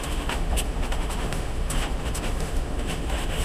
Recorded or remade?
remade